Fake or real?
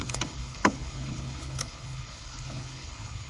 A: fake